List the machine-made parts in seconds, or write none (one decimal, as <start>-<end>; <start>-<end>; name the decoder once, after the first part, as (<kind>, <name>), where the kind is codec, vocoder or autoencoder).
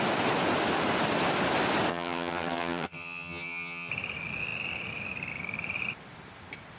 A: 1.9-3.9 (vocoder, HiFi-GAN)